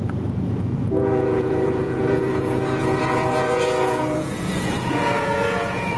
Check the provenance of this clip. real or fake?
fake